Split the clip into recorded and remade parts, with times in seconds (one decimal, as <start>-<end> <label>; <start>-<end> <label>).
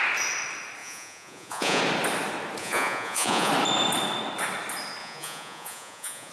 0.0-0.8 recorded; 0.8-1.8 remade; 1.8-2.6 recorded; 2.6-3.5 remade; 3.5-5.0 recorded; 5.0-6.3 remade